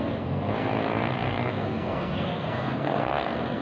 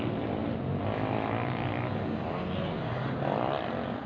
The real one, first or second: second